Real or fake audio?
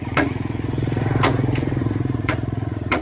fake